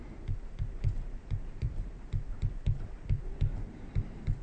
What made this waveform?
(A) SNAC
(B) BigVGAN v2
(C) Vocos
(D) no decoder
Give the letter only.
B